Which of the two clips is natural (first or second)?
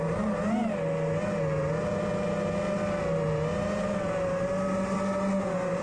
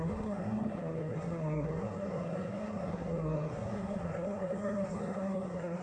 first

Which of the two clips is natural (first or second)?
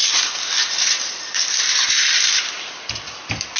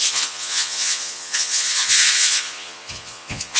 first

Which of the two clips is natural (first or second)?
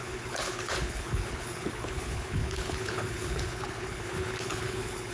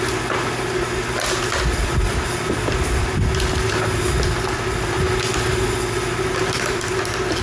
second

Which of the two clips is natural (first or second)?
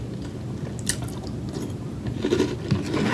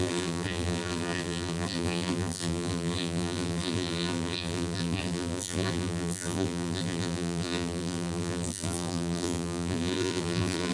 first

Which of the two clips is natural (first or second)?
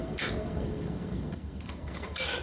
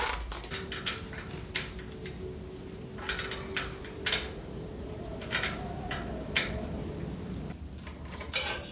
second